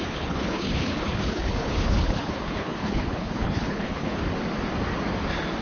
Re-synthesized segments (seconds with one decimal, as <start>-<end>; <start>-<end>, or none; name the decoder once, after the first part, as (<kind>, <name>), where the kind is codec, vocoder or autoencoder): 0.0-4.2 (codec, HILCodec)